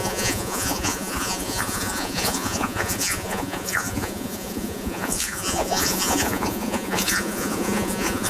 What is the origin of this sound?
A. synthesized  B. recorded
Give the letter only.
A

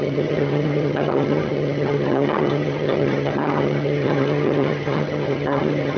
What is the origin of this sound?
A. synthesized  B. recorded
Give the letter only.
A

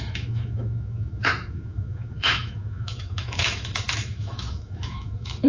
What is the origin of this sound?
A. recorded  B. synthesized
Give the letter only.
B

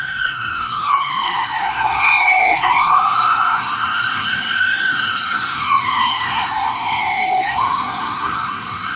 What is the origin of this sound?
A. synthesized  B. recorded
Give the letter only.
A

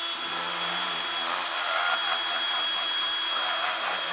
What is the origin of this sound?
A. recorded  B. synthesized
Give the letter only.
A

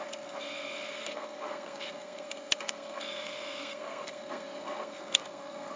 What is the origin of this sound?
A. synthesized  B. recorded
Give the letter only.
A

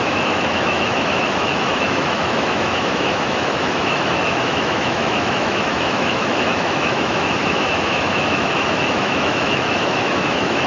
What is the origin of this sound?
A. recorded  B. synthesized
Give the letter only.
B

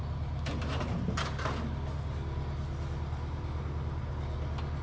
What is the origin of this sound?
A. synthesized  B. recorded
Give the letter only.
B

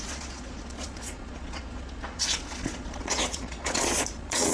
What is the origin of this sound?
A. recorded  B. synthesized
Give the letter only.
B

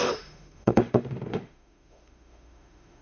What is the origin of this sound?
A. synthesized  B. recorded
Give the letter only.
A